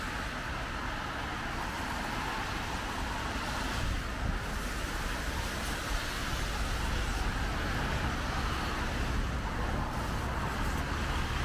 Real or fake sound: real